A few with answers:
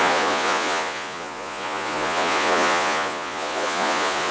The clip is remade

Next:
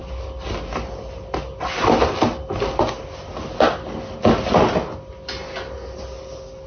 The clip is recorded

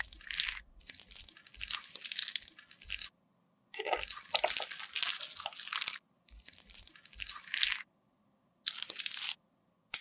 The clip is recorded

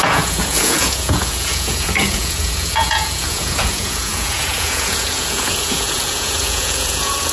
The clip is remade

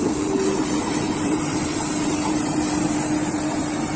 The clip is recorded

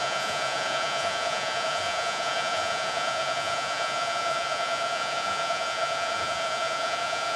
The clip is remade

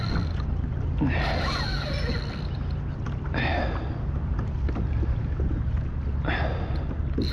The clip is recorded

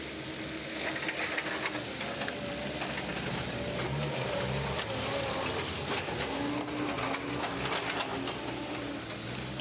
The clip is recorded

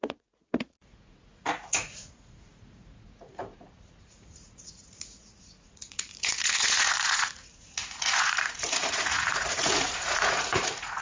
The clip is remade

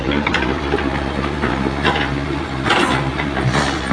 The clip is remade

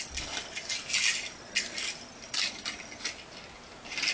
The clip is recorded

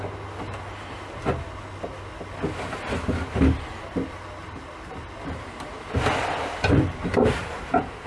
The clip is recorded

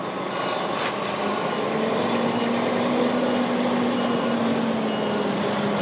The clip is recorded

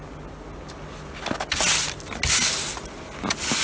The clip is recorded